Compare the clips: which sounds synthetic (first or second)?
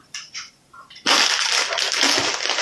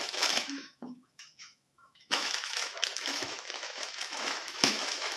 second